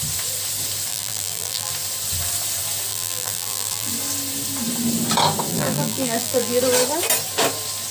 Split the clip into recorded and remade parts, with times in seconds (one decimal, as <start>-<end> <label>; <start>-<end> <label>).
0.0-0.9 recorded; 0.9-1.7 remade; 1.7-2.9 recorded; 2.9-3.9 remade; 3.9-5.5 recorded; 5.5-6.6 remade; 6.6-7.9 recorded